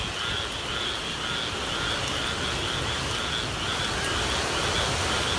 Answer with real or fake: real